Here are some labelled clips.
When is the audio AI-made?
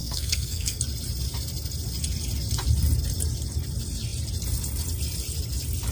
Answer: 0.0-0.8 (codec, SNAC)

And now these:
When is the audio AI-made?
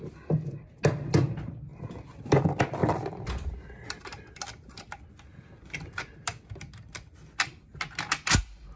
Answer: none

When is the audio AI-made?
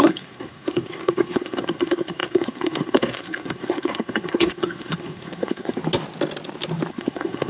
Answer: 0.0-5.8 (codec, SNAC); 6.9-7.5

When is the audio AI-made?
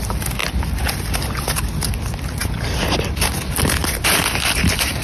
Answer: 0.4-1.9 (vocoder, BigVGAN v2); 3.8-4.6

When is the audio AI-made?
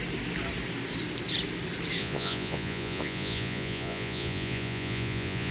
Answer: 2.0-5.5 (vocoder, Vocos)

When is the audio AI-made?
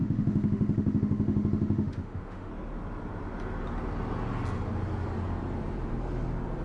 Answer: 0.0-2.5 (autoencoder, DAC-VAE)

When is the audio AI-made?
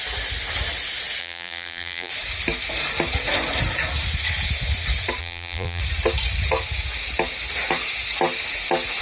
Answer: 1.2-2.1 (vocoder, BigVGAN v2); 5.2-5.8